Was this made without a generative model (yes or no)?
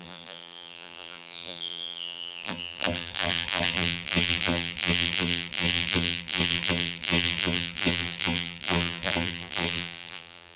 no